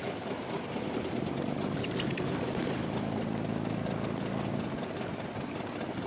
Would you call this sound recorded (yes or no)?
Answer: yes